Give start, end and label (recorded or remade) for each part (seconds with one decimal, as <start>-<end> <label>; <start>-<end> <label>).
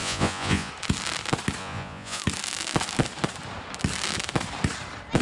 0.0-0.7 remade; 0.7-1.6 recorded; 1.6-2.2 remade; 2.2-5.2 recorded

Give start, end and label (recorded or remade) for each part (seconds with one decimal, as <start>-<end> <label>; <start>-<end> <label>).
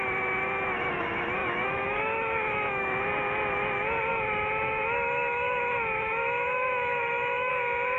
0.0-1.4 recorded; 1.4-3.0 remade; 3.0-4.1 recorded; 4.1-7.5 remade; 7.5-8.0 recorded